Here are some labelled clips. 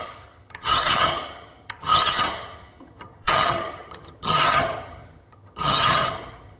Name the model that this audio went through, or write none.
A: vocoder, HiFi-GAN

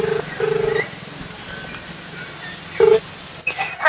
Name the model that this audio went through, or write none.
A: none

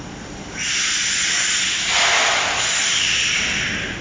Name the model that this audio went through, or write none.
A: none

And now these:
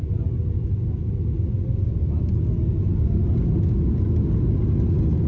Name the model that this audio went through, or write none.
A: none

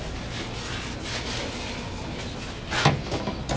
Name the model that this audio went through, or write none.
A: none